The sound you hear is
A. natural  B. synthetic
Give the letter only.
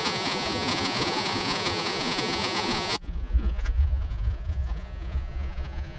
B